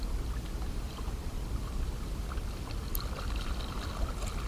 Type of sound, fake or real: real